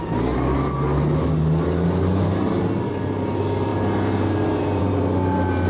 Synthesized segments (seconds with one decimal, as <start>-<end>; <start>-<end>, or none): none